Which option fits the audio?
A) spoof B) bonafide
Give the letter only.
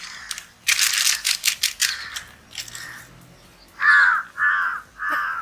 B